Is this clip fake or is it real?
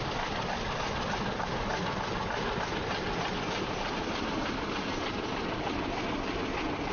real